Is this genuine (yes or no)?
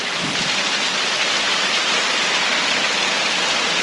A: yes